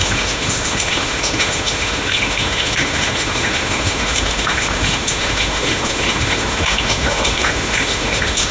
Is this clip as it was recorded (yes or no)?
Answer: no